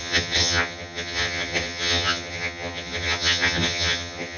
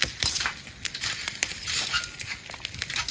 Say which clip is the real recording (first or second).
second